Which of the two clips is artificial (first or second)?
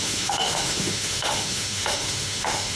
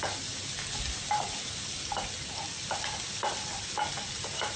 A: first